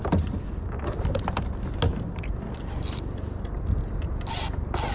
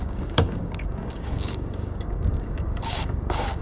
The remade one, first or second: second